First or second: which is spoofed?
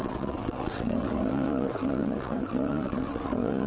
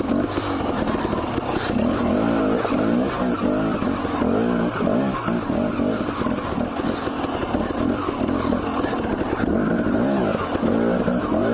first